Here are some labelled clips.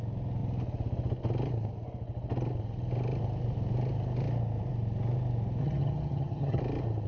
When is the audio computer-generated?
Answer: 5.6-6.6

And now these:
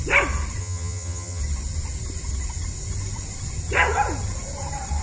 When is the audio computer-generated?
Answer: 0.6-1.4

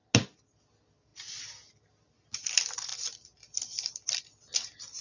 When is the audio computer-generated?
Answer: none

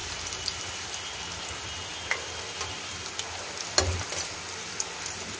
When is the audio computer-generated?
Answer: none

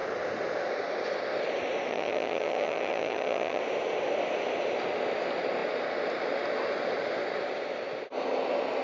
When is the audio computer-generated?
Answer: 1.9-3.6

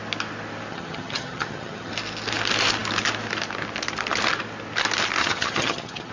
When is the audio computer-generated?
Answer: 0.7-1.9; 5.2-6.1

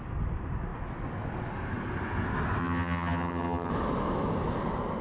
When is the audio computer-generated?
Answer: 2.6-3.7